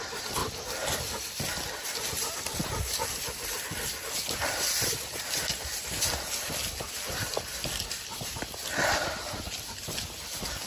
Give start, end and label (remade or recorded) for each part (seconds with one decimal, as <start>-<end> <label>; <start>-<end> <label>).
0.0-10.7 recorded